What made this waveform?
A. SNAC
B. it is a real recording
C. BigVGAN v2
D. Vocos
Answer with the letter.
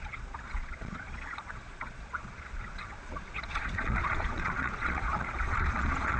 D